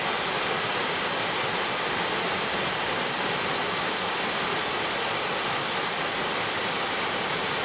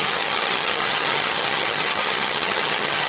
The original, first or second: first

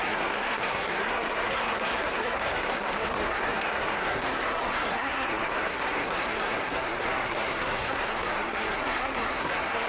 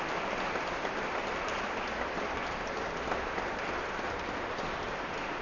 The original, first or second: second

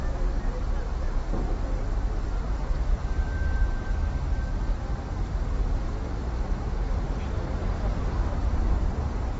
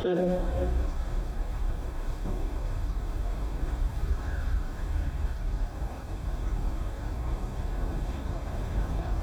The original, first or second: first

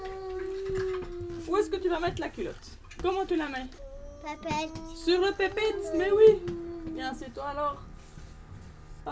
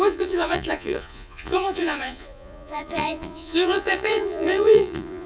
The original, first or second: first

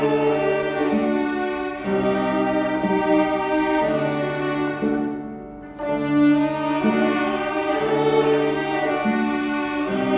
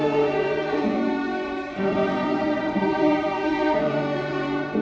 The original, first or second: first